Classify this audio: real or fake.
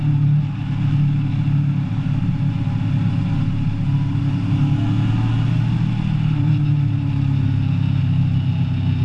real